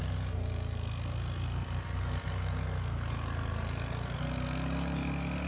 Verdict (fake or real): real